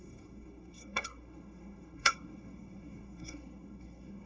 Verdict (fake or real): fake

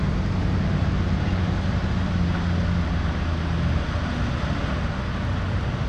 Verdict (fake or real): real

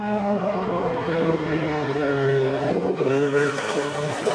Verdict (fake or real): fake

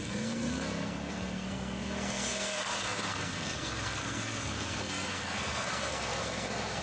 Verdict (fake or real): fake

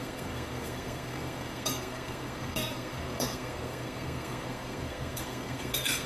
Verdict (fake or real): fake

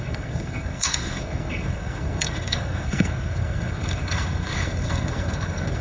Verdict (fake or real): fake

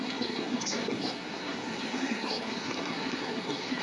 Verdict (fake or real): fake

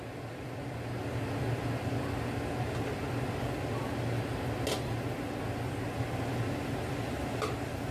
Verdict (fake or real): real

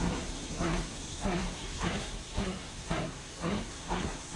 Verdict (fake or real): fake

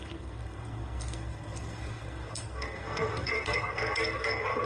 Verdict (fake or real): fake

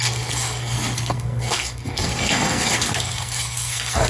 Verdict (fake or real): fake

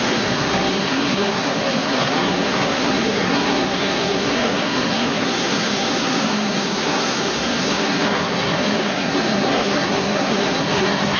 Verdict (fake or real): fake